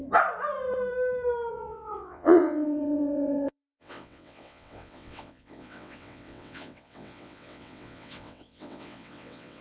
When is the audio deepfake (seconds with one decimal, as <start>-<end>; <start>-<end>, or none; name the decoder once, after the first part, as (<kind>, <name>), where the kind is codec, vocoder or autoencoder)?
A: 1.5-9.6 (vocoder, WaveNeXt)